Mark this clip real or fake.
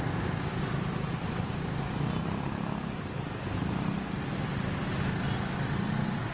real